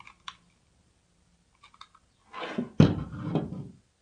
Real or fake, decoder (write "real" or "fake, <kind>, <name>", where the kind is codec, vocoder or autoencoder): real